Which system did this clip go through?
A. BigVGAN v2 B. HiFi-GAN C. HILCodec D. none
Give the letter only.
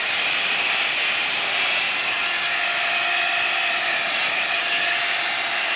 D